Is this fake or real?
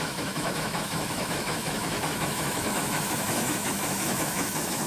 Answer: fake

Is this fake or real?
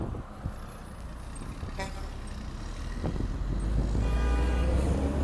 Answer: real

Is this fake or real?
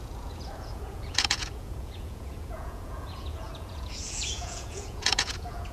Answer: fake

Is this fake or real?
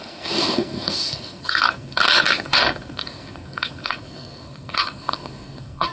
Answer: fake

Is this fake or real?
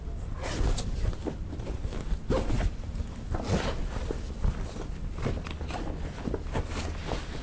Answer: real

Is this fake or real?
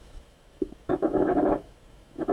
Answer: fake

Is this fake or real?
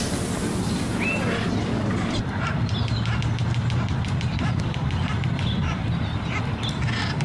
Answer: real